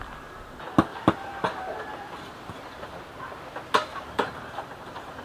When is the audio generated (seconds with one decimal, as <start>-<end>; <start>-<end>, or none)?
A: 0.9-3.0; 3.9-5.2